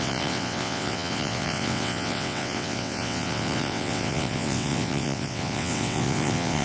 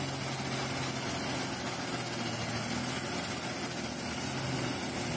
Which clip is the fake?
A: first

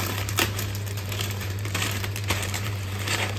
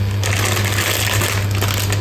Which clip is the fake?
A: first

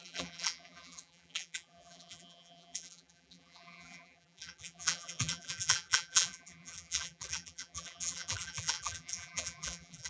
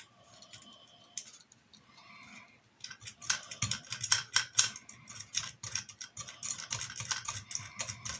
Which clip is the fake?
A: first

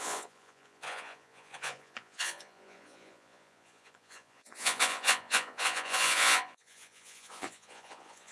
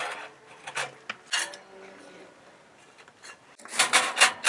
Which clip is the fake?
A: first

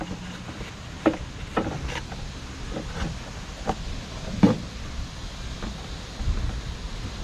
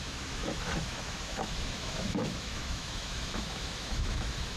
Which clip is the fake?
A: second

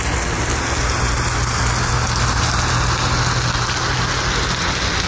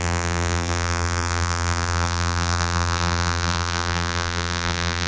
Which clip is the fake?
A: second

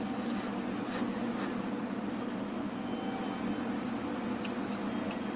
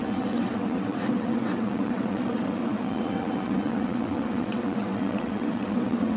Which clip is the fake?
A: second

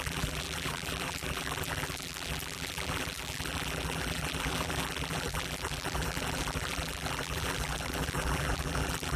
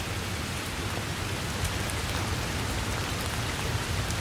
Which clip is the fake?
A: first